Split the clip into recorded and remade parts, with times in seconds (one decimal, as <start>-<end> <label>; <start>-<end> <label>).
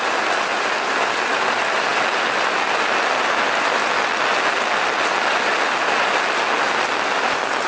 0.0-7.7 recorded